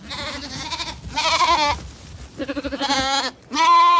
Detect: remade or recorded recorded